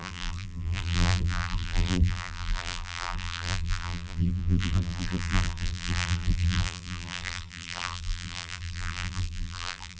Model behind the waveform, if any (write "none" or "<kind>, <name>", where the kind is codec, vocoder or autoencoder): vocoder, BigVGAN v2